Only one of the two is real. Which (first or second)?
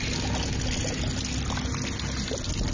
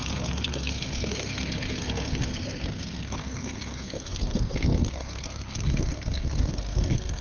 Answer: first